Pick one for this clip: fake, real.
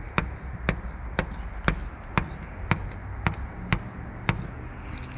real